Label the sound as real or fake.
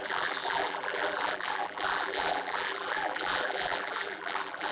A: fake